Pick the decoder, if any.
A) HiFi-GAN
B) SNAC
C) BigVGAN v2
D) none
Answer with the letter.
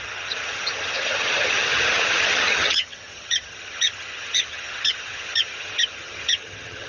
A